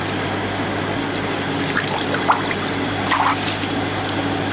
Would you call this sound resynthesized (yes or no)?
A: no